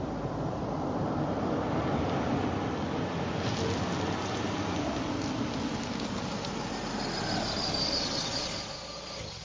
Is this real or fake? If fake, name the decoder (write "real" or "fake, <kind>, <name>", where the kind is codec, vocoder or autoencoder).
real